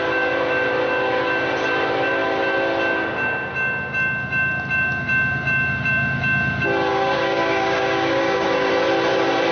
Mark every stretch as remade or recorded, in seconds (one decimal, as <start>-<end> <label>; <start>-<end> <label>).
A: 0.0-6.9 recorded; 6.9-8.7 remade; 8.7-9.5 recorded